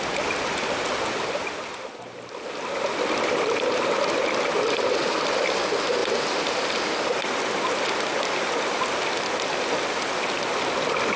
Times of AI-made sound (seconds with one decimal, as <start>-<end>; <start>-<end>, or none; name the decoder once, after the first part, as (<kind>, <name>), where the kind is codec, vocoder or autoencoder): none